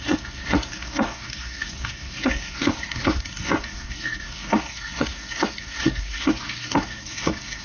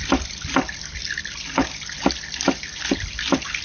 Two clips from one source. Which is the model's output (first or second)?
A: first